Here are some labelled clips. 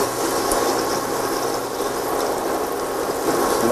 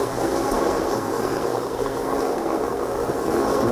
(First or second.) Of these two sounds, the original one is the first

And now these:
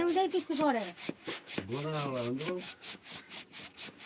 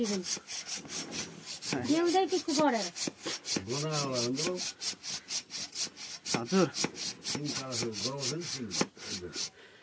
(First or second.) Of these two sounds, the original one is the second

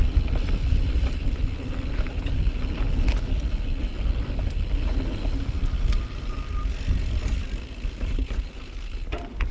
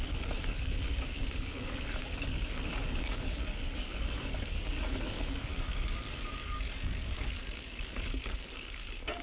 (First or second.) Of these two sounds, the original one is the first